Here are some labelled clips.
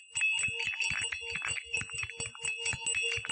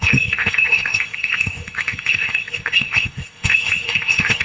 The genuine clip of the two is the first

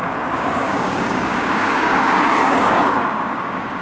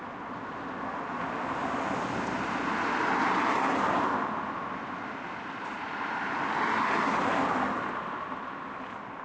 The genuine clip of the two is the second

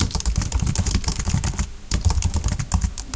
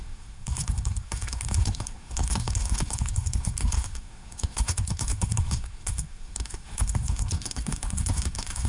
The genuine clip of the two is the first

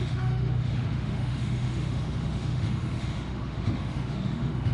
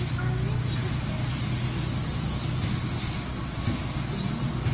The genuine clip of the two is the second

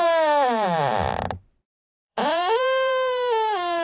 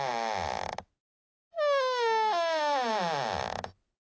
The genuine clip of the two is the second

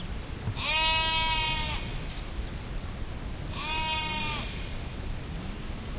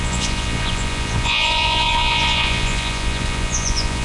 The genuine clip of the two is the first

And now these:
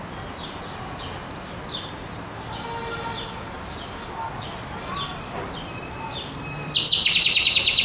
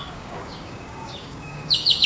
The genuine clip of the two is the first